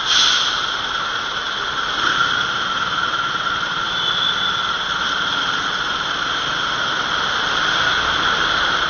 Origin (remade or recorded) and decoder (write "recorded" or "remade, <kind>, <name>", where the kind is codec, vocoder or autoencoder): recorded